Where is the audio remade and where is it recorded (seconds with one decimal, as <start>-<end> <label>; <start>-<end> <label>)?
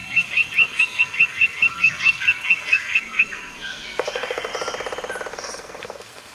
0.0-4.5 remade; 4.5-5.3 recorded; 5.3-6.3 remade